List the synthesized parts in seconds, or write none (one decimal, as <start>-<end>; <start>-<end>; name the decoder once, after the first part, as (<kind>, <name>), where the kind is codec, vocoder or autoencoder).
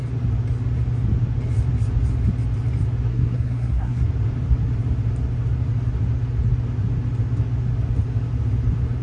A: 3.1-4.1 (codec, SNAC)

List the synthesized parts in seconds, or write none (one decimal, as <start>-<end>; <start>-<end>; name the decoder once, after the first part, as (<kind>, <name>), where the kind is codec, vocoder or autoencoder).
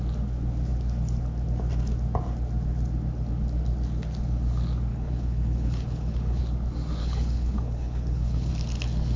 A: 4.9-6.4 (codec, HILCodec); 7.0-8.5